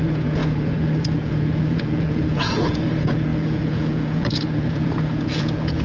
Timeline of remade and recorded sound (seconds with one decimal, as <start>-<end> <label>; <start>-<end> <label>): 0.0-5.8 remade